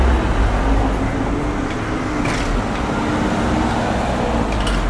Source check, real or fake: real